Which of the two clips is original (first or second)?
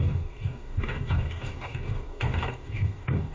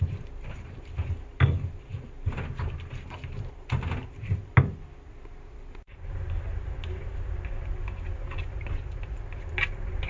second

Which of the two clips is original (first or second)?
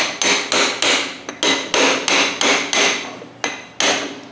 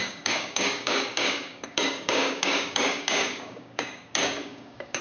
first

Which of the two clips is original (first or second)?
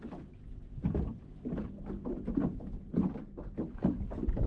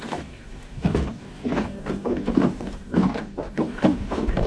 first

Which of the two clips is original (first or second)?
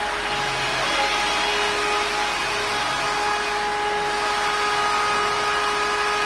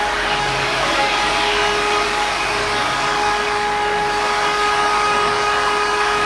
first